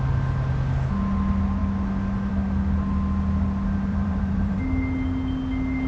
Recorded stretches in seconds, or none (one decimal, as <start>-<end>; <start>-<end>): 0.0-3.9; 4.6-5.9